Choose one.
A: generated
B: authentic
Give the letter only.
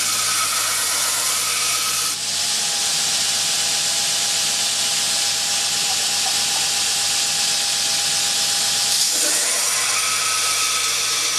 B